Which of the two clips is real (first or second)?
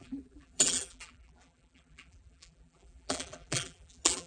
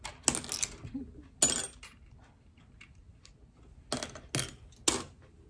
second